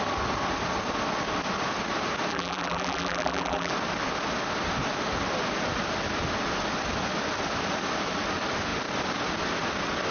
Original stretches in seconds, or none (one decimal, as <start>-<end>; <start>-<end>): 0.0-2.3; 3.7-10.1